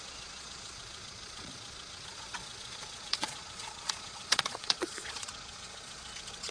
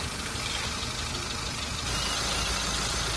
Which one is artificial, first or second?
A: first